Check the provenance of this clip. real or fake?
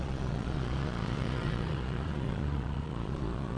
fake